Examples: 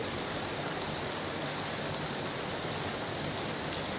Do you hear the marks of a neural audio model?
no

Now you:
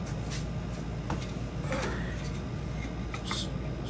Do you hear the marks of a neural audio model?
no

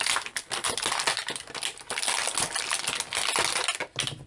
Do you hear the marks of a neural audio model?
no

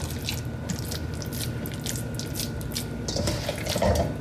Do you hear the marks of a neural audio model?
no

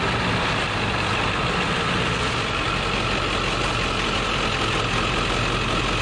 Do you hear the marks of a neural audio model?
no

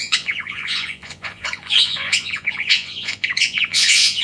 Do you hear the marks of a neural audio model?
yes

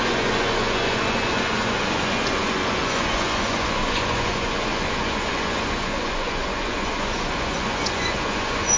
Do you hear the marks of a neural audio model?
yes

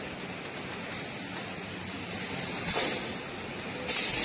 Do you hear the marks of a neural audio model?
no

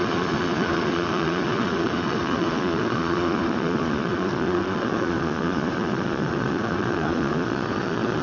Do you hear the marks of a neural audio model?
yes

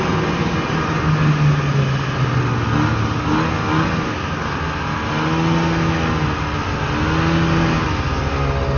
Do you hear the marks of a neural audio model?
no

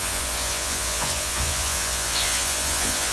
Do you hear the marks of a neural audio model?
yes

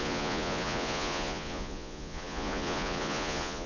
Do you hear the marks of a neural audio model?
yes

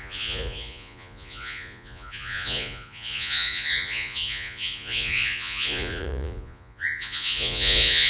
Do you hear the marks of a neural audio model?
yes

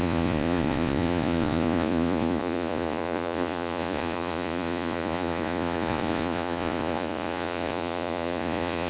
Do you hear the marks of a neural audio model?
yes